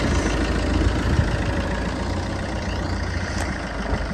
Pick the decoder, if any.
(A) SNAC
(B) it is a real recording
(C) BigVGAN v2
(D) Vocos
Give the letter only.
B